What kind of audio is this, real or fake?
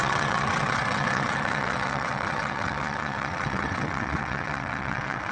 fake